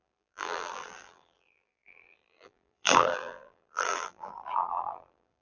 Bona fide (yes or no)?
no